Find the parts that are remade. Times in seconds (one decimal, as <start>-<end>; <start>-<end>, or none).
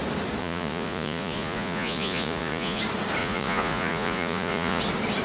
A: 0.4-2.8; 3.2-4.8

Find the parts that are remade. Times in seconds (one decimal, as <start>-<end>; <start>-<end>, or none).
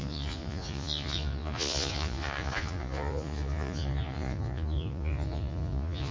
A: 0.0-6.1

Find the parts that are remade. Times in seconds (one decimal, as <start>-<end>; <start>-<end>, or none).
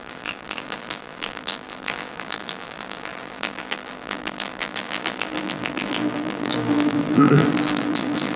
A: 0.0-8.4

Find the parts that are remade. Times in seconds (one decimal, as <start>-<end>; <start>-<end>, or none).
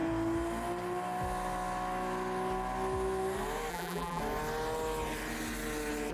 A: 3.7-4.2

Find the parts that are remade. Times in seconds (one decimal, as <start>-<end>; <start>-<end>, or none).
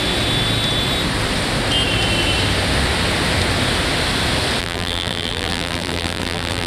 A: 4.6-6.7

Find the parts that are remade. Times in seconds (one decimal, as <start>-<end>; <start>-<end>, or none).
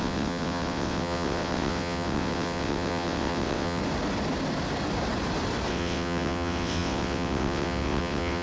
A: 0.0-3.8; 5.7-8.4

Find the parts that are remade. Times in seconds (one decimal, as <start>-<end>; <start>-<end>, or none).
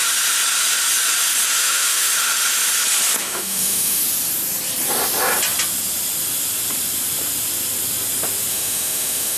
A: 1.6-2.1; 3.2-4.0; 8.5-9.4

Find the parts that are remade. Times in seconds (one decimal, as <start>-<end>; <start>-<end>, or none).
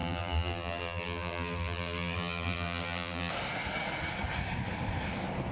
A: 0.0-3.3